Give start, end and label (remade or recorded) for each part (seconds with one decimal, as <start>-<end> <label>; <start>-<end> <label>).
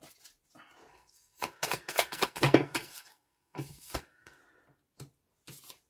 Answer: 0.0-0.9 recorded; 0.9-4.4 remade; 4.4-5.9 recorded